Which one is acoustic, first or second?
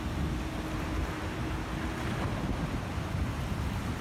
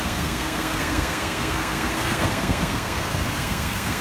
first